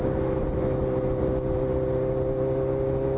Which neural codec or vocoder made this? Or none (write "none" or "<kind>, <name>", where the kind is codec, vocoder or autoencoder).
none